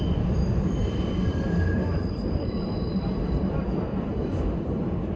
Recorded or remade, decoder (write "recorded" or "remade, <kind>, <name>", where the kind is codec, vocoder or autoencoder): remade, vocoder, BigVGAN v2